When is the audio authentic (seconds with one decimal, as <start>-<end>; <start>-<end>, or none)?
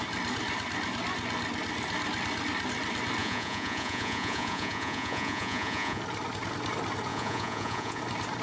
0.0-3.2; 6.0-7.1; 8.0-8.4